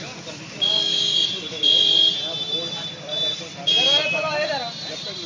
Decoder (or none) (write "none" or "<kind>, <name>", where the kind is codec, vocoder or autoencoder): none